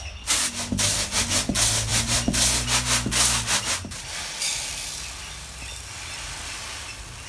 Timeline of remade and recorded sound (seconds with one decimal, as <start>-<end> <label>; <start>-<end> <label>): 0.0-7.3 recorded